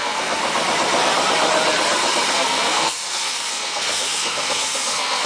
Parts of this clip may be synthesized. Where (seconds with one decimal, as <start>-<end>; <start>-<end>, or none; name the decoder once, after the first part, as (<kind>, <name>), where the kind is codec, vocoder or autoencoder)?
0.0-0.4 (codec, SNAC); 2.3-5.3